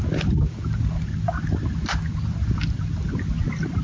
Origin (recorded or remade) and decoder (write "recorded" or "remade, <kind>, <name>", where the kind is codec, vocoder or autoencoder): recorded